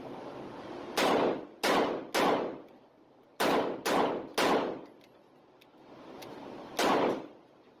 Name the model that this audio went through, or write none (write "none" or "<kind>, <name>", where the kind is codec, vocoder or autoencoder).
none